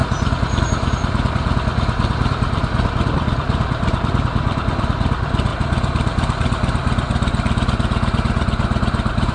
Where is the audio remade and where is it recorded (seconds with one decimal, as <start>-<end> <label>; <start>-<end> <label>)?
0.0-5.5 remade; 5.5-9.3 recorded